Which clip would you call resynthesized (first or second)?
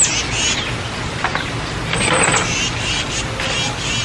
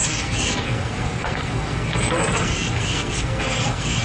second